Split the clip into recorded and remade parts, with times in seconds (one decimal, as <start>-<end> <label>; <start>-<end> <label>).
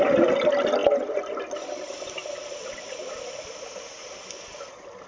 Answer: 0.0-5.1 recorded